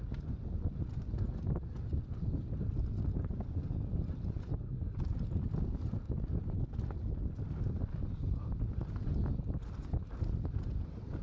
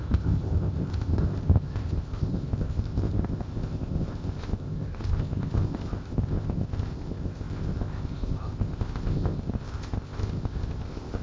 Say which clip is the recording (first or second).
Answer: first